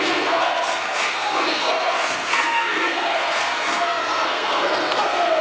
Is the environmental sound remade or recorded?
remade